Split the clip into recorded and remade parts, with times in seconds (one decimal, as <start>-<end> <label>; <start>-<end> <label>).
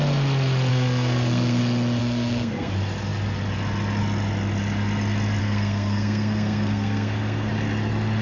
0.0-0.7 recorded; 0.7-1.6 remade; 1.6-2.0 recorded; 2.0-2.7 remade; 2.7-5.4 recorded; 5.4-7.5 remade; 7.5-8.2 recorded